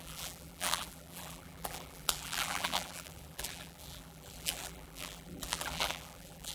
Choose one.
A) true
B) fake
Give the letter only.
B